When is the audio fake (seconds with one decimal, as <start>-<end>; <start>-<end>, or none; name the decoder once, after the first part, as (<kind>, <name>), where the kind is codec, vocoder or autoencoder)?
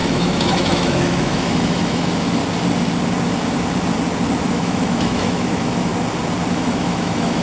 0.0-2.4 (autoencoder, DAC-VAE); 4.5-5.9; 6.5-7.4